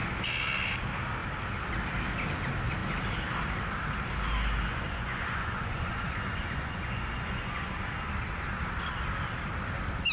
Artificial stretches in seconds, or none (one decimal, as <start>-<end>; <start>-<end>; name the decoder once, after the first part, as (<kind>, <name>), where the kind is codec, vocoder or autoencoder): 4.7-7.7 (vocoder, Vocos)